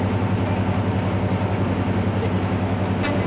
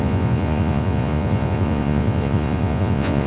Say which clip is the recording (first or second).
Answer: first